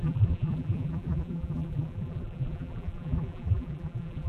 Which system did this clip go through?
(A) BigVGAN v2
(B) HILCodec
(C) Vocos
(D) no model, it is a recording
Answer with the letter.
A